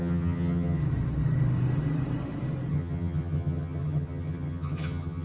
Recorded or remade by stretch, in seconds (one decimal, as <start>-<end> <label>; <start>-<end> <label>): 0.0-0.8 remade; 0.8-2.7 recorded; 2.7-5.2 remade